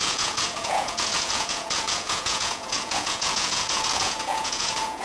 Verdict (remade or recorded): remade